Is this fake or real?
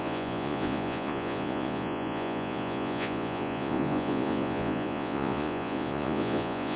fake